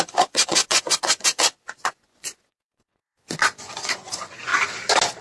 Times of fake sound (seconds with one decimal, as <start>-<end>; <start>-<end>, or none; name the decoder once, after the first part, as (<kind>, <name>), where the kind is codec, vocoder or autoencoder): 0.0-4.5 (vocoder, Vocos)